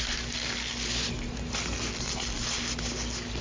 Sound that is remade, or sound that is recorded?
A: recorded